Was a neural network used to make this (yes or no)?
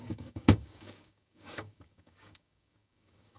yes